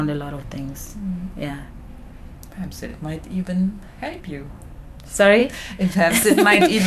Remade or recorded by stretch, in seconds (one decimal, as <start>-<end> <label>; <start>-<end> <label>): 0.0-0.9 recorded; 0.9-1.5 remade; 1.5-2.9 recorded; 2.9-4.2 remade; 4.2-5.4 recorded; 5.4-6.9 remade